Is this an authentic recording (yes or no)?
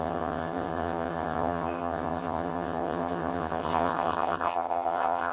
no